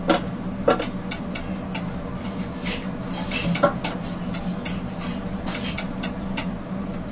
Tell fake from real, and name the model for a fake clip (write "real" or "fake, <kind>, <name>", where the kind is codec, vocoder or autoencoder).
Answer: real